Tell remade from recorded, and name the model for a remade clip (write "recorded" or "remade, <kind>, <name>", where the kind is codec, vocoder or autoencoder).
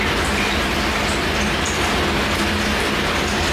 recorded